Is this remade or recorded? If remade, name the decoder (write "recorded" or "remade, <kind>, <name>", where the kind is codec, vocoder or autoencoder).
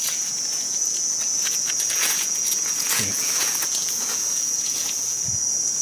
remade, vocoder, Vocos